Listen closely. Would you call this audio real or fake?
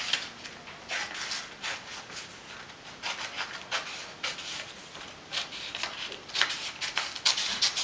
real